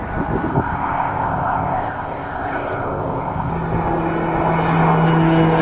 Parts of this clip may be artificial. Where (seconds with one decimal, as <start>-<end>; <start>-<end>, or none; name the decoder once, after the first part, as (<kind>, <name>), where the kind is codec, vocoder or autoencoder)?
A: 0.5-3.5 (codec, ZipCodec)